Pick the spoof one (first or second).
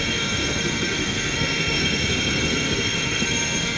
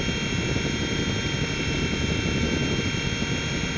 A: first